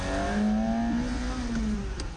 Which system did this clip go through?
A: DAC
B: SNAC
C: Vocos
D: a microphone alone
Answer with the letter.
D